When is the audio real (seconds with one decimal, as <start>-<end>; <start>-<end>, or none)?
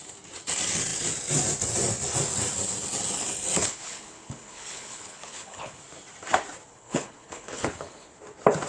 0.0-3.6; 5.8-6.7; 8.1-8.7